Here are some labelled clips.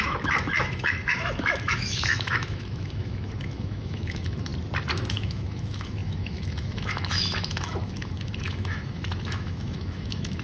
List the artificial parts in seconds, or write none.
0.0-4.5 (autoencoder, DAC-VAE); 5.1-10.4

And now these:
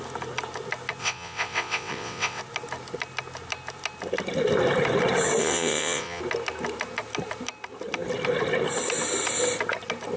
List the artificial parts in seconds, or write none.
1.0-2.4 (vocoder, WaveNeXt); 5.4-6.2

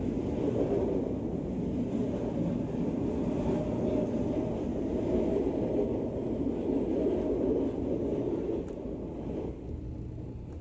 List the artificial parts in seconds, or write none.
none

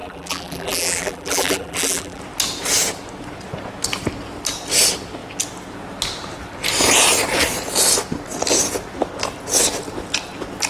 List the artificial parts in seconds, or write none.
0.0-2.2 (vocoder, BigVGAN v2)

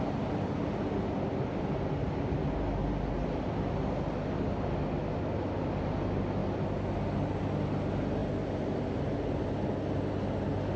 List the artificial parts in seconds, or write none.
none

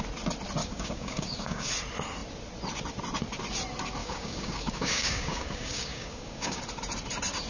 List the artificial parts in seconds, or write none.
0.6-1.7 (codec, DAC); 4.0-6.6

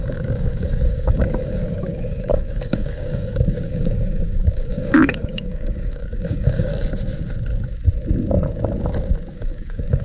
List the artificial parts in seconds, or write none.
0.0-6.7 (codec, DAC); 9.3-10.0

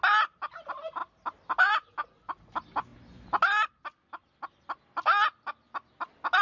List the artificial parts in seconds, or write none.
none